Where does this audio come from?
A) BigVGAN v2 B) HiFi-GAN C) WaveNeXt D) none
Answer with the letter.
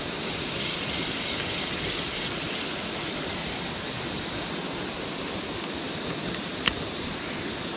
D